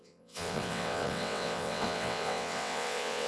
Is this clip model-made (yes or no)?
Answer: yes